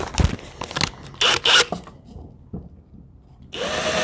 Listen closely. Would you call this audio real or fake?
real